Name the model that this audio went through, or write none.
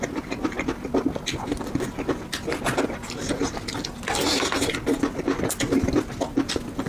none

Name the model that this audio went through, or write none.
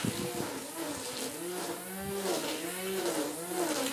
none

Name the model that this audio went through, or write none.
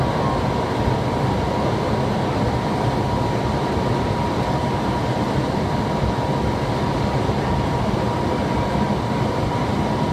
none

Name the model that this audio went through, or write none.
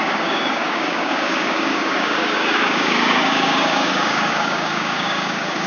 codec, DAC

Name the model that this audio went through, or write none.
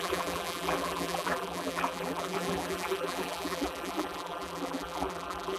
vocoder, BigVGAN v2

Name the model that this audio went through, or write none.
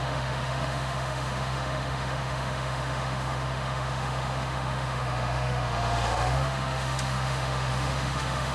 autoencoder, DAC-VAE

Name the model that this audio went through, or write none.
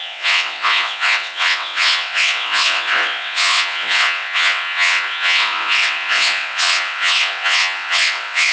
vocoder, WaveNeXt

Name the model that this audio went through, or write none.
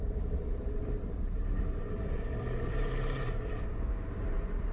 vocoder, BigVGAN v2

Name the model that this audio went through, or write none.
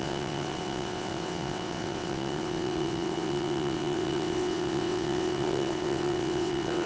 vocoder, WaveNeXt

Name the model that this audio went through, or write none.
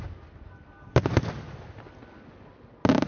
none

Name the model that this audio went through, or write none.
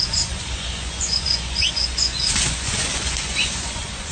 vocoder, Vocos